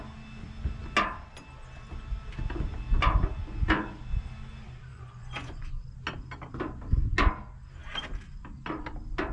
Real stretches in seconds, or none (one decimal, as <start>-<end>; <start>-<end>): 0.0-3.4; 4.0-4.9; 5.7-9.3